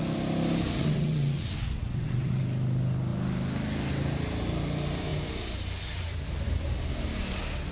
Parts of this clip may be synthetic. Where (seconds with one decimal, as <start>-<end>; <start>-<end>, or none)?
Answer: 0.8-2.4